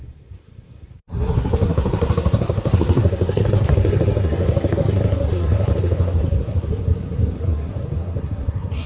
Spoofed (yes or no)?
yes